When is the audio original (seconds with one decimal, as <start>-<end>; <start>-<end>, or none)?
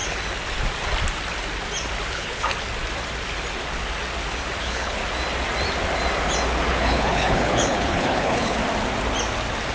0.0-2.1; 2.5-4.6; 5.0-6.7; 8.6-9.7